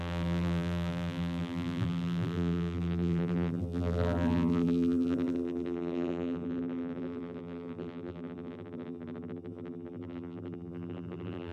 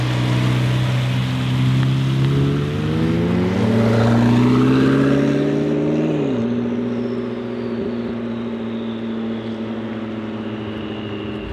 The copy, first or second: first